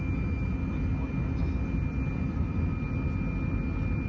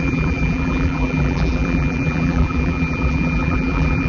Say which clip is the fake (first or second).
second